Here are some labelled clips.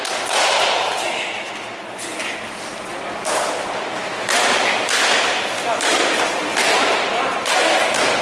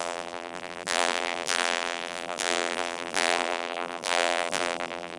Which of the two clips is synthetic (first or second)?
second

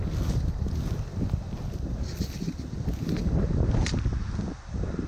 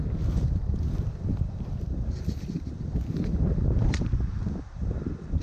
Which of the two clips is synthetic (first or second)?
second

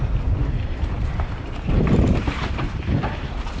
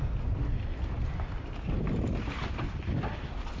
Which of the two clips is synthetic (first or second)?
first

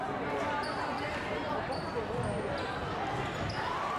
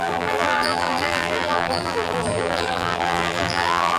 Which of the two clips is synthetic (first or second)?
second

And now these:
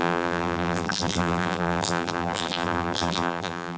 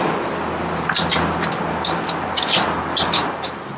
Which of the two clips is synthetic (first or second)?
first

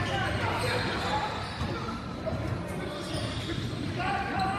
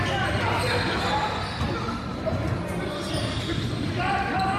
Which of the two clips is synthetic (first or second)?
first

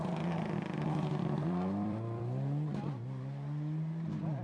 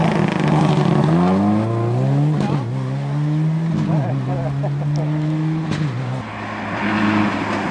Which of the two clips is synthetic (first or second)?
first